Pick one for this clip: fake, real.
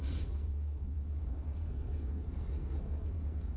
fake